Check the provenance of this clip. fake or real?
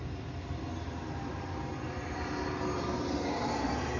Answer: real